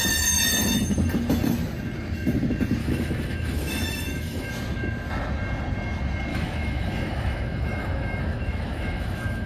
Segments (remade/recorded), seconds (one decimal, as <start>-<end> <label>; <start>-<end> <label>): 0.0-2.8 recorded; 2.8-4.5 remade; 4.5-6.3 recorded; 6.3-9.5 remade